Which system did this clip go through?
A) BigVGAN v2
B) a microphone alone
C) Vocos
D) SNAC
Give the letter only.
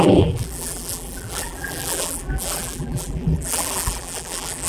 A